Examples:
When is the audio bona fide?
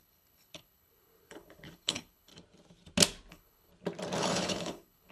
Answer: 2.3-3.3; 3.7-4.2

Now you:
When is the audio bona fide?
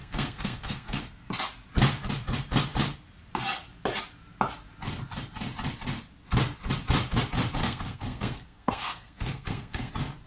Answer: 1.0-7.6; 9.9-10.3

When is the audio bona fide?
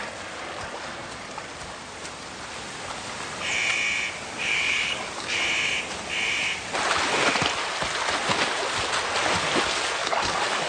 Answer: 0.0-4.4; 5.4-10.0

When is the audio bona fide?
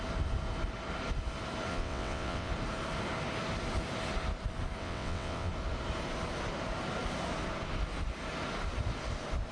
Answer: 0.0-1.7; 2.5-4.8; 5.5-9.5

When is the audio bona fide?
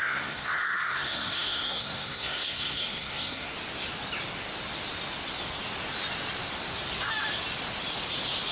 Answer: 3.5-8.5